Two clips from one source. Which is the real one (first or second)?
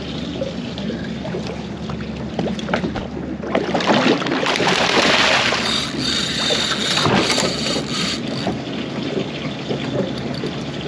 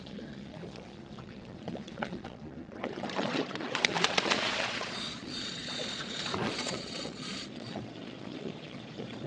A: first